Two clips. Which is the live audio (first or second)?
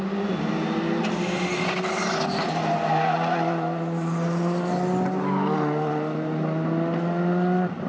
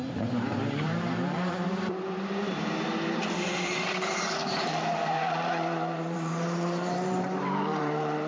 first